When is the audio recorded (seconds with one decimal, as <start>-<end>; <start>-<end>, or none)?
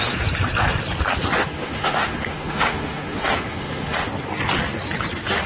0.0-1.4; 4.1-5.5